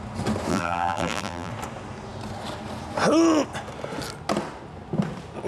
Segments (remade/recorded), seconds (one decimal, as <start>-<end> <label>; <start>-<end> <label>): 0.0-0.5 recorded; 0.5-1.5 remade; 1.5-5.5 recorded